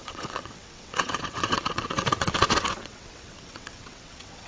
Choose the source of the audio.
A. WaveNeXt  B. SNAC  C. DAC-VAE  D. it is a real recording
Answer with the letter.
A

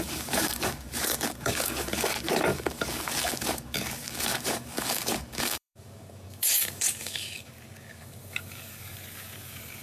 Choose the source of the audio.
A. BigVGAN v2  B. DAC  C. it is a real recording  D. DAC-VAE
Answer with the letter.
B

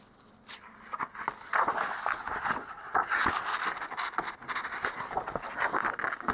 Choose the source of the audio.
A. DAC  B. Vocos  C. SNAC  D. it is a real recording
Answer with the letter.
D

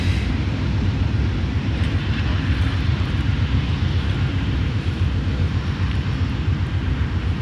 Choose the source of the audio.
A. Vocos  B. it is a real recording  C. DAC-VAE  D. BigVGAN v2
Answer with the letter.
D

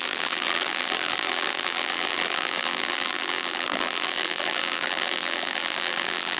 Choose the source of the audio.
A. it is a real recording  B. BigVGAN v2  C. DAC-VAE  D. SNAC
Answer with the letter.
B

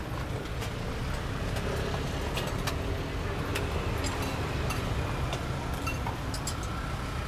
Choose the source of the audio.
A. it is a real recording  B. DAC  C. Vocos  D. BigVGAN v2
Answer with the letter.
A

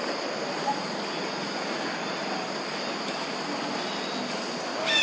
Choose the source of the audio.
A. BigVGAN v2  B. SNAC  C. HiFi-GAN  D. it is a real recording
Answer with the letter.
D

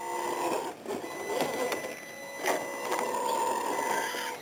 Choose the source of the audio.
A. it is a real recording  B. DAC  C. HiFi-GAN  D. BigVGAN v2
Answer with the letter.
A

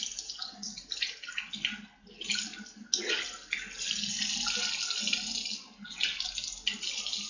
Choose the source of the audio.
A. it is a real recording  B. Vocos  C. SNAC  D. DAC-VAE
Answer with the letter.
A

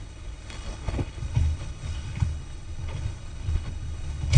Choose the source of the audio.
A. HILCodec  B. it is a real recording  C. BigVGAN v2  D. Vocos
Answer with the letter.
A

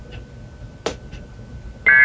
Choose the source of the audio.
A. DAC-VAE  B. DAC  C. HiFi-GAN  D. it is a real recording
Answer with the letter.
D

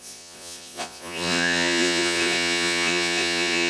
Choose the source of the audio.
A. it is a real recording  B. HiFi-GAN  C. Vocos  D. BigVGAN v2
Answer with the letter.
C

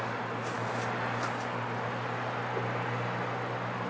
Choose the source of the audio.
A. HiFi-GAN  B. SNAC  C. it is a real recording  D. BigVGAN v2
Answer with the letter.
C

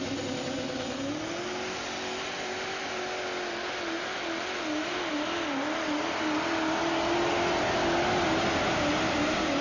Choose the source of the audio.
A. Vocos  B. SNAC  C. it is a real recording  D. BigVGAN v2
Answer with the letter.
C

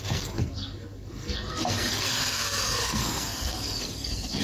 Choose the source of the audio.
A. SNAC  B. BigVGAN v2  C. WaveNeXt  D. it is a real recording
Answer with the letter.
A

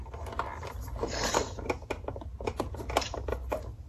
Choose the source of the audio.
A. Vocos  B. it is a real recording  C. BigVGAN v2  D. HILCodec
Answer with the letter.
B